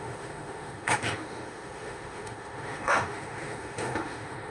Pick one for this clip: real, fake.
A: fake